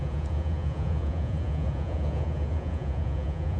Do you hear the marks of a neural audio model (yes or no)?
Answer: yes